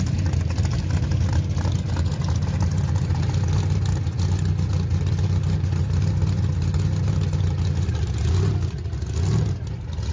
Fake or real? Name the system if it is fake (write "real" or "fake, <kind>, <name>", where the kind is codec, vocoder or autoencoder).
real